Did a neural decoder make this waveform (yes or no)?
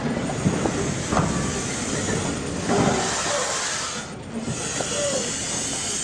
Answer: no